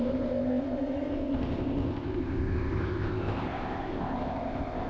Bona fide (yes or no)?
no